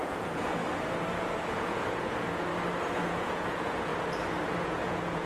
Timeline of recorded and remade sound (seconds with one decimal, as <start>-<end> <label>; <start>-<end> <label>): 0.0-0.6 remade; 0.6-1.2 recorded; 1.2-2.5 remade; 2.5-3.0 recorded; 3.0-3.9 remade; 3.9-4.5 recorded; 4.5-5.3 remade